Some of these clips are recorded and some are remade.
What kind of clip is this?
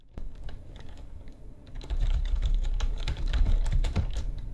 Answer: remade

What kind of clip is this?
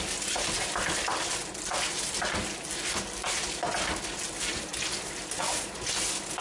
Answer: recorded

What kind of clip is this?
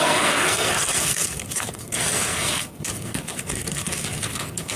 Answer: remade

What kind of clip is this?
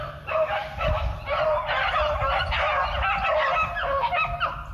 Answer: recorded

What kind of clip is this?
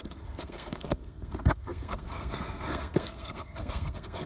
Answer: remade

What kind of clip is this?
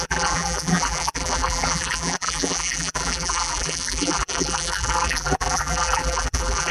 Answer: remade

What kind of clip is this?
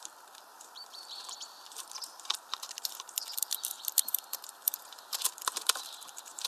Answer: remade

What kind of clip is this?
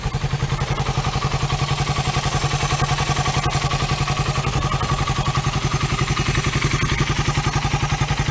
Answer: recorded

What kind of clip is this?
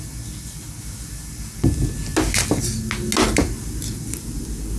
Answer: recorded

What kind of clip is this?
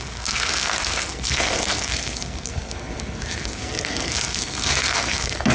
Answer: remade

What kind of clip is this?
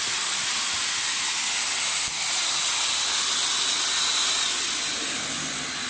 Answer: recorded